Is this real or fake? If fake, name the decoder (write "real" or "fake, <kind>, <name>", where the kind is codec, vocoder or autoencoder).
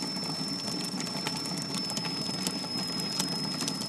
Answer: real